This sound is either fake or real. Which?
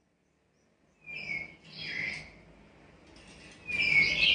real